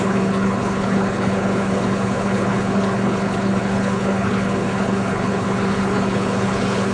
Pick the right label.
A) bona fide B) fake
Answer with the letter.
B